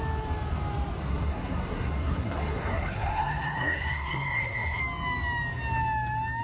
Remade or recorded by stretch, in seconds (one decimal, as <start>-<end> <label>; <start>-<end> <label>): 0.0-1.1 recorded; 1.1-4.8 remade; 4.8-6.4 recorded